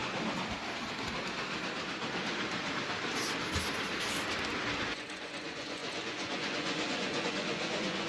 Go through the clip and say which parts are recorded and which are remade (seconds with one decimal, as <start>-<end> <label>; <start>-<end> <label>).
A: 0.0-4.9 recorded; 4.9-8.1 remade